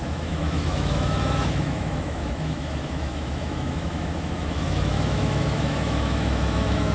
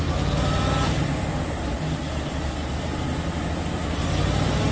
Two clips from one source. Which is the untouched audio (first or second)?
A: second